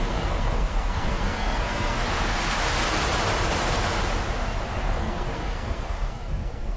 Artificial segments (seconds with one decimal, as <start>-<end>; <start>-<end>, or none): 0.0-2.0; 5.0-6.8